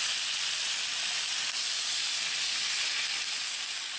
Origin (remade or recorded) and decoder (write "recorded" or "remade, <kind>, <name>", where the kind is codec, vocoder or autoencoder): recorded